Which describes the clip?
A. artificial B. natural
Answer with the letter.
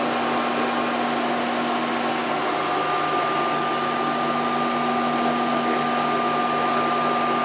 B